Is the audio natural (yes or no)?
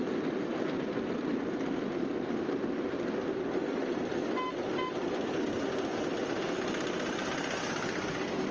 yes